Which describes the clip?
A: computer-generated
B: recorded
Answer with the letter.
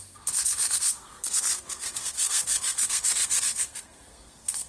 A